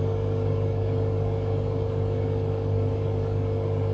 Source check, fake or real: fake